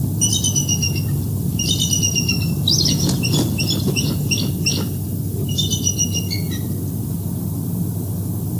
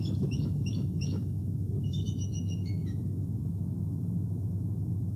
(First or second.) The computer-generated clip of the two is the second